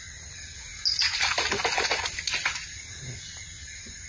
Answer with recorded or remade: recorded